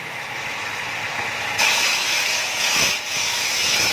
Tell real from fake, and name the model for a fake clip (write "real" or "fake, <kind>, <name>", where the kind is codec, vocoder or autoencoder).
fake, autoencoder, DAC-VAE